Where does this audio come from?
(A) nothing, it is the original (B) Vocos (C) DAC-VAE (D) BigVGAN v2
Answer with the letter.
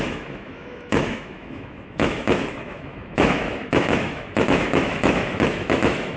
C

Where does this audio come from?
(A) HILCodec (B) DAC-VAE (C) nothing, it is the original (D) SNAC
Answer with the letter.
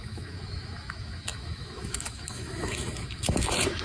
B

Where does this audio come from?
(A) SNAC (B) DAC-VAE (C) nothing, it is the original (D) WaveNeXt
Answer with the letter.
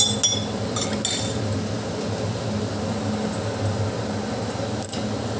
C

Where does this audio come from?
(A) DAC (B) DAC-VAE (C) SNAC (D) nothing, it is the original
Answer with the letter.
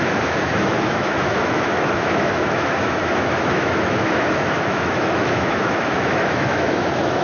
B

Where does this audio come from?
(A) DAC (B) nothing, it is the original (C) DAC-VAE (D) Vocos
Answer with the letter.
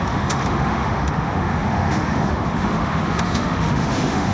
C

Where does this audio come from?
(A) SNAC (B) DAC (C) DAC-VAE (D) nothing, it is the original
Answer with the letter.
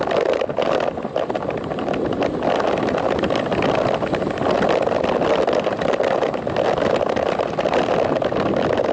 D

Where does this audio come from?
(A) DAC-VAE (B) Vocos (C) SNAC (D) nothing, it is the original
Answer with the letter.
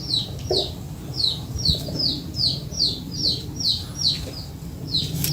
D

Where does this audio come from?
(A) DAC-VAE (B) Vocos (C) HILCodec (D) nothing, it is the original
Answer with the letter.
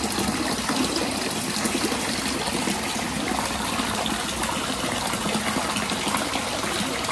D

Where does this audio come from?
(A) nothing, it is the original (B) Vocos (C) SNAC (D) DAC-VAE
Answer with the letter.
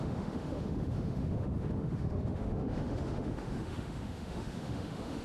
D